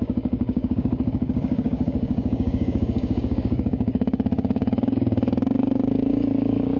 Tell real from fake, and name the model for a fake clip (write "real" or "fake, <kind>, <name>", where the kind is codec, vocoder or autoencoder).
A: fake, codec, DAC